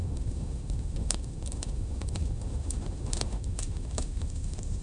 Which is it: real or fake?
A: fake